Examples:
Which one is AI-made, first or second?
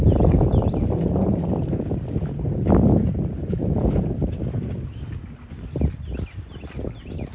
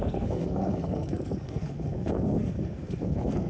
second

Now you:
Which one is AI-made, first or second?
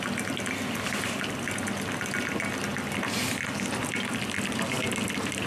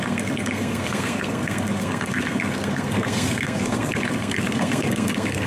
second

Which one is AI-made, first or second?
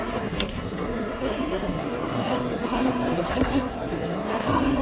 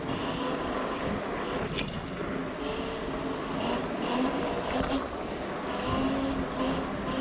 first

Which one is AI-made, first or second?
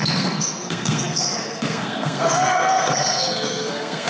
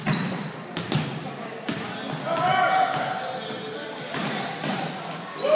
first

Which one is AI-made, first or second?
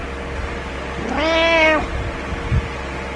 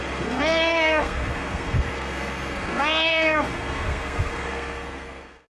second